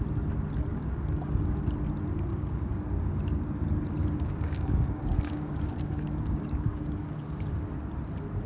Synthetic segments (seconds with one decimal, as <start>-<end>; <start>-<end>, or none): 0.7-1.6; 2.3-2.8; 4.0-7.5